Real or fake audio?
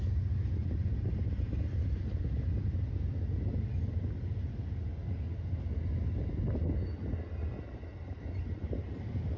real